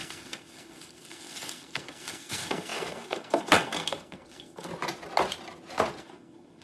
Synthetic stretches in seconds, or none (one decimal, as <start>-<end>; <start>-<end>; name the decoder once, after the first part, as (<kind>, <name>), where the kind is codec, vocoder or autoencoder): 0.0-4.7 (codec, SNAC); 6.0-6.6